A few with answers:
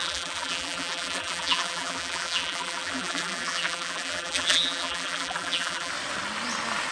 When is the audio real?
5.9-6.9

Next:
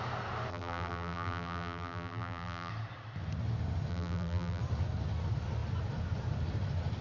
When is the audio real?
0.0-0.5; 2.7-3.9; 4.6-7.0

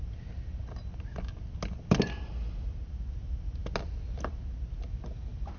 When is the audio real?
0.0-5.6

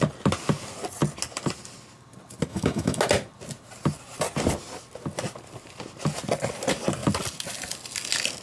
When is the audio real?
0.0-2.5; 3.0-8.4

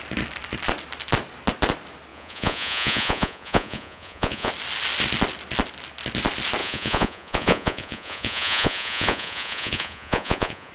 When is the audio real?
0.0-2.1; 4.5-6.6

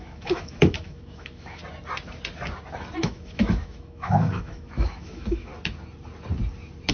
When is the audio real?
1.6-3.0; 5.5-6.9

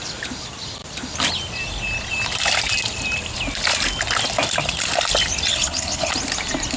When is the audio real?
0.0-5.5; 6.1-6.8

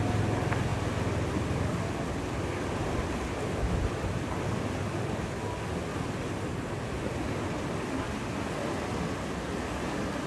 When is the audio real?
0.0-10.3